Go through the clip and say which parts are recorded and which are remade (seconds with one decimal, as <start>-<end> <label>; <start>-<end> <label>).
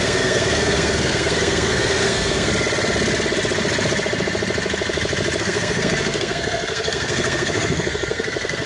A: 0.0-2.5 remade; 2.5-5.4 recorded; 5.4-8.7 remade